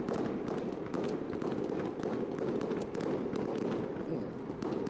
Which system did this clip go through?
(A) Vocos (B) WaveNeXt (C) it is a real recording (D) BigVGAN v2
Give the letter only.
C